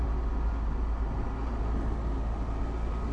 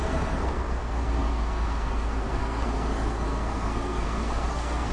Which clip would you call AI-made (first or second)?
second